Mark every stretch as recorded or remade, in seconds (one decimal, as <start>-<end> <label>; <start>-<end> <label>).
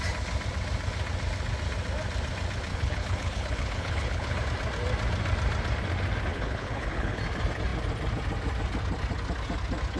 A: 0.0-2.7 recorded; 2.7-4.4 remade; 4.4-6.3 recorded; 6.3-7.2 remade; 7.2-10.0 recorded